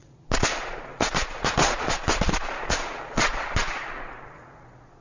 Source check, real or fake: fake